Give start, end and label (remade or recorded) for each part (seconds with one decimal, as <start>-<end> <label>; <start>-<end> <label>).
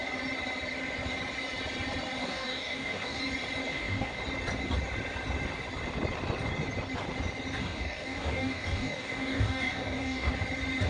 0.0-2.2 recorded; 2.2-3.2 remade; 3.2-3.7 recorded; 3.7-4.2 remade; 4.2-7.6 recorded; 7.6-10.3 remade; 10.3-10.9 recorded